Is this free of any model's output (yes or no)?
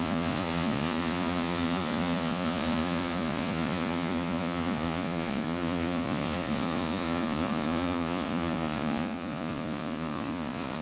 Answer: no